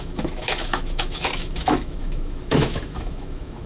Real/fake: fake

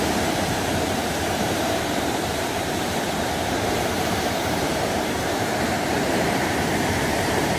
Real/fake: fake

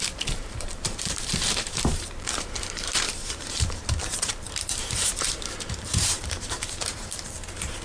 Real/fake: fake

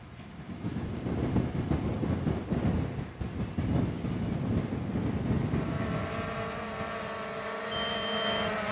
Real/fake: real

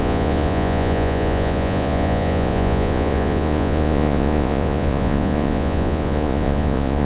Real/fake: fake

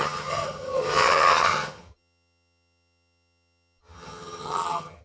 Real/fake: fake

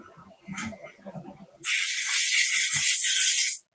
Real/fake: real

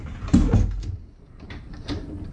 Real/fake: fake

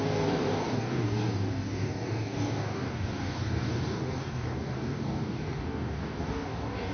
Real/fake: fake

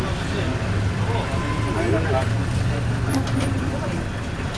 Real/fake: real